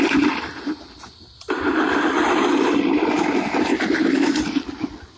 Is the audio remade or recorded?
recorded